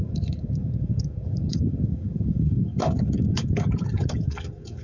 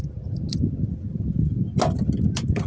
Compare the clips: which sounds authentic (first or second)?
second